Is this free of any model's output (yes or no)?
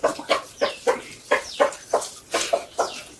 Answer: yes